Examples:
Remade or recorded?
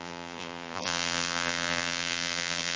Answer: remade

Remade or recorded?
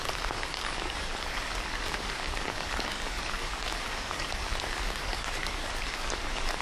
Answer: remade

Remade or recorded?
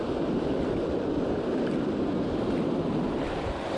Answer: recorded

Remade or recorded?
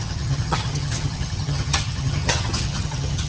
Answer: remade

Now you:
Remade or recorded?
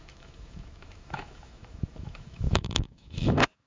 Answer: remade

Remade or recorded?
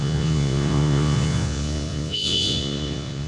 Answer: remade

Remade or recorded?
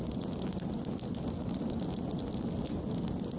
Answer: recorded